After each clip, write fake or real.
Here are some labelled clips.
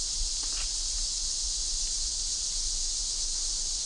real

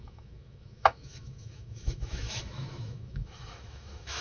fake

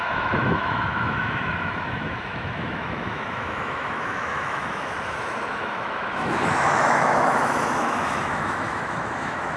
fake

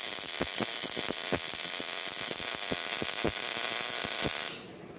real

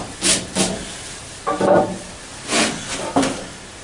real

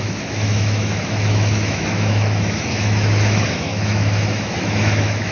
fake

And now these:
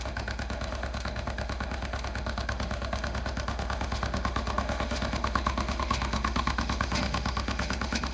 fake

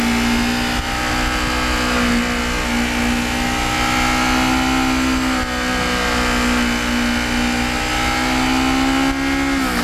real